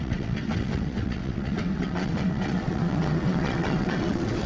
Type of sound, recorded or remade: remade